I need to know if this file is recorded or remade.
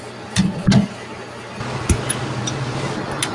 recorded